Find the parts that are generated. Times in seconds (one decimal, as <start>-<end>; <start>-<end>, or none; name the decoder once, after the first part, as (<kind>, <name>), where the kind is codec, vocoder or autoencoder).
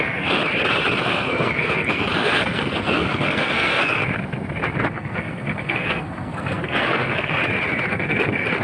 0.0-0.4 (codec, SNAC); 1.0-4.0; 4.9-7.4; 7.9-8.6